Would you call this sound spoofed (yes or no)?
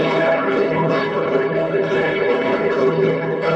yes